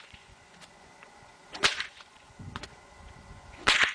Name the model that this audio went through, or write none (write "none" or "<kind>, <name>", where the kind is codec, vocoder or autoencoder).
vocoder, Vocos